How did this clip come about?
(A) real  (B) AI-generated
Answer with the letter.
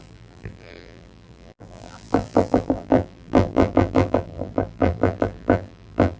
B